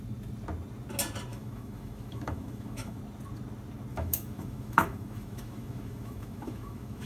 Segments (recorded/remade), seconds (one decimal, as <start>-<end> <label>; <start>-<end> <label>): 0.0-1.3 recorded; 1.3-3.0 remade; 3.0-3.9 recorded; 3.9-7.1 remade